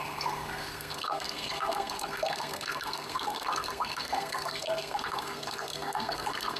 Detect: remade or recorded remade